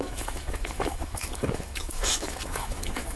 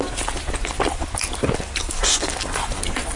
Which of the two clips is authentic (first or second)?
second